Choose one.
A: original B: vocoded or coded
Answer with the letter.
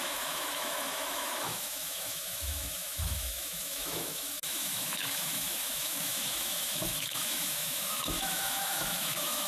B